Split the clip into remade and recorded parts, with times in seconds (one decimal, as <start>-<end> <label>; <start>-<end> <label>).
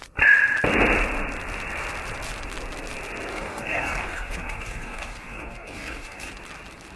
0.0-3.3 recorded; 3.3-6.3 remade; 6.3-7.0 recorded